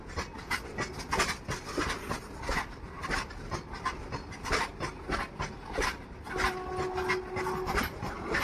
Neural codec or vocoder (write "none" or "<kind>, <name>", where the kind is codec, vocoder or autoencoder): none